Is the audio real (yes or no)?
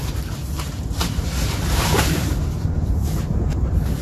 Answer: no